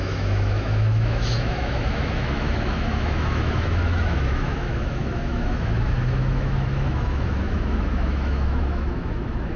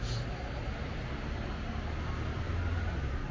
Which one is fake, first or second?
first